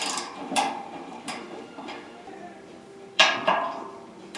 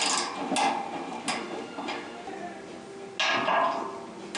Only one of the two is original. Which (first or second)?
second